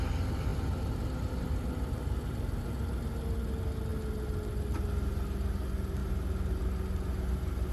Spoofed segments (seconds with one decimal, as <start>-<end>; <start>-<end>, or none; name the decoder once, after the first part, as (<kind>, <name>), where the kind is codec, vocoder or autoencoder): none